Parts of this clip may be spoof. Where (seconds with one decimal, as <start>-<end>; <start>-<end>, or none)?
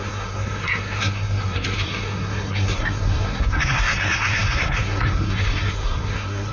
0.0-6.5